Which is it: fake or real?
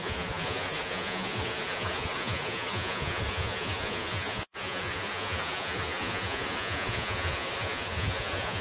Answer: fake